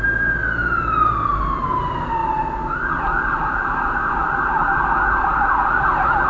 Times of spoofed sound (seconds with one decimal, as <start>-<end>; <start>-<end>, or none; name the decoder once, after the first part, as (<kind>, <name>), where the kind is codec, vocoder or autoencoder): none